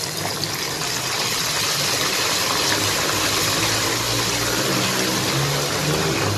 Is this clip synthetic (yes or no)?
no